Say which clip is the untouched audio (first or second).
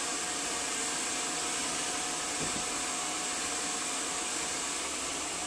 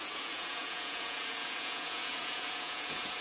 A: first